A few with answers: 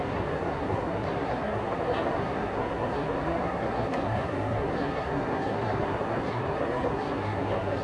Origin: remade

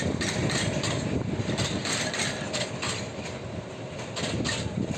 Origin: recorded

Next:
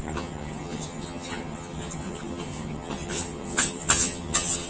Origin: remade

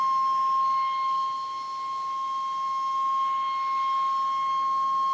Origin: recorded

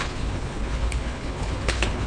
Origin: remade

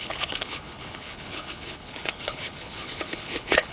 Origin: remade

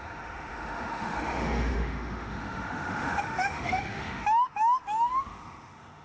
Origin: remade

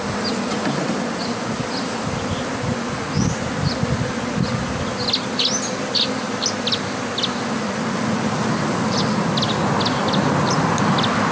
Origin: recorded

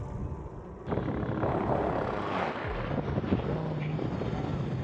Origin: recorded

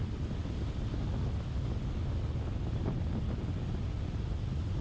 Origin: recorded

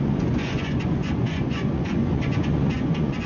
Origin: remade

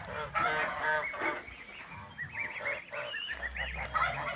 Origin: recorded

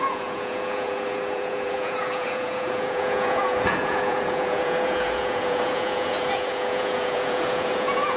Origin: remade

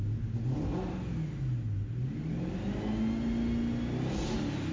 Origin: recorded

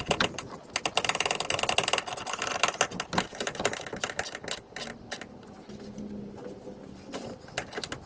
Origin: recorded